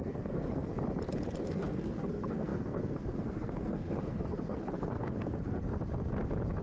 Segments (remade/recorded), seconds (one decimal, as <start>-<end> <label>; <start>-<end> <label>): 0.0-0.7 remade; 0.7-1.5 recorded; 1.5-5.7 remade; 5.7-6.6 recorded